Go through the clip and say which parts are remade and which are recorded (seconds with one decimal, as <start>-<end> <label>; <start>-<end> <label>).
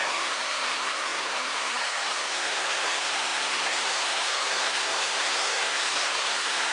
0.0-6.7 remade